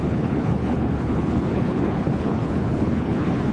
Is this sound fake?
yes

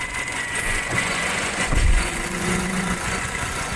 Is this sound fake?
yes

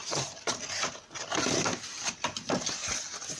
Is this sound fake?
no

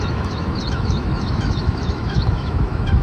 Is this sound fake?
yes